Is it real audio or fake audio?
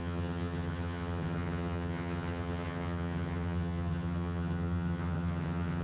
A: fake